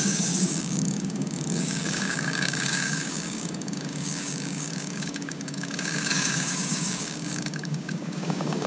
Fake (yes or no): yes